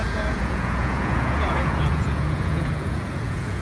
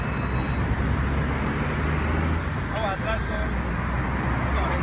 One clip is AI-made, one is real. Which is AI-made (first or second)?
first